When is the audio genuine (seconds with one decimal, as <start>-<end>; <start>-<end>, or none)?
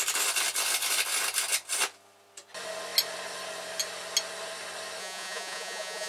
0.0-5.0